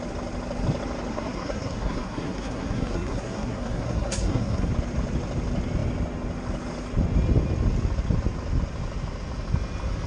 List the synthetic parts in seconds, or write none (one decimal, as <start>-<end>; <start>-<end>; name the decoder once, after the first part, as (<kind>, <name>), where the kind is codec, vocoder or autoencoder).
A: 1.1-4.7 (codec, SNAC)